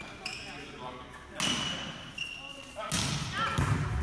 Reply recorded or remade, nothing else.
recorded